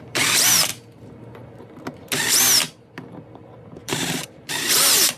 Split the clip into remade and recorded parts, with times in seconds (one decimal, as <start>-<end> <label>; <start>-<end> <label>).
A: 0.0-0.7 remade; 0.7-3.8 recorded; 3.8-5.2 remade